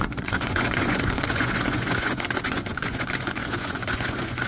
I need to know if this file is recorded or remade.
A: remade